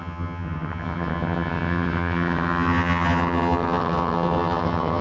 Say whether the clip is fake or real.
fake